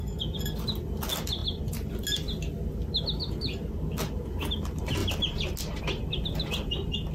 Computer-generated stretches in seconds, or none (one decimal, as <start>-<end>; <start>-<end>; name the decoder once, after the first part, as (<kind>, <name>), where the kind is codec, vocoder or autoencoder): 1.4-1.9 (vocoder, BigVGAN v2)